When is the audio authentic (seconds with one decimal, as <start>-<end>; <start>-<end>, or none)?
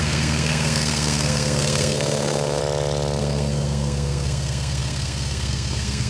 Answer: 2.6-3.2